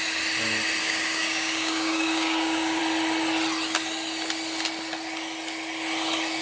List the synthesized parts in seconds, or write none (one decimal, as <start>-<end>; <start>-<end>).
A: 0.8-2.8